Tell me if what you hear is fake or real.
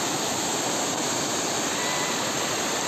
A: real